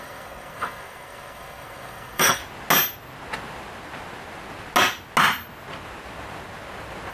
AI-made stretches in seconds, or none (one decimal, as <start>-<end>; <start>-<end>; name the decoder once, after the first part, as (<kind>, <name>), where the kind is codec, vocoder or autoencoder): 0.0-2.4 (codec, SNAC)